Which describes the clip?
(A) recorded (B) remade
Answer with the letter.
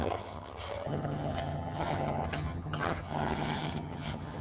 B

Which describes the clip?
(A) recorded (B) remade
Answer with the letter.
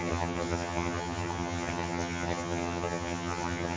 B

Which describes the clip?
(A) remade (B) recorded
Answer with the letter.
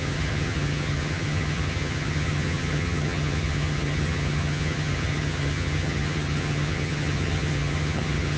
A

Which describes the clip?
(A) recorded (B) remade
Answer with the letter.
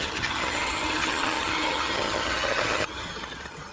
B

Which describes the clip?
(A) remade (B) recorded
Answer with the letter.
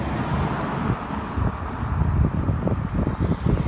B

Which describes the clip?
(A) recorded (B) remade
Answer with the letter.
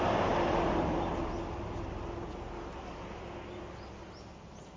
A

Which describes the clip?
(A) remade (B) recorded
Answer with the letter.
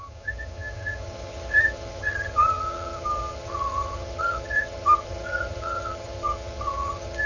A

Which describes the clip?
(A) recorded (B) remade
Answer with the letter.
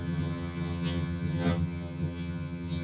B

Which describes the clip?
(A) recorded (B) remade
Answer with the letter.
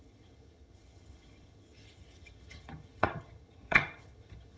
B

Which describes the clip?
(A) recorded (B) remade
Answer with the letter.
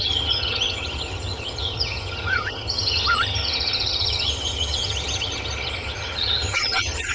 B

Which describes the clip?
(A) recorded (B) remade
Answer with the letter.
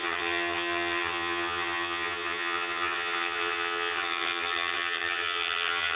B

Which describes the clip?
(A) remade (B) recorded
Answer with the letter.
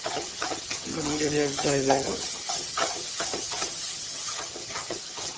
A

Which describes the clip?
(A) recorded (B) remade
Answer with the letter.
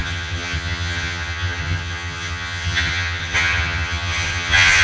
B